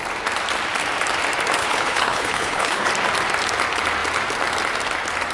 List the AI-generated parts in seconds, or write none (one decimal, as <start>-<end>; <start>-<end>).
1.6-2.9